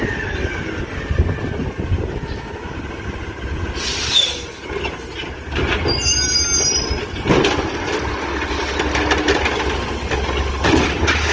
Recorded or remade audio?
recorded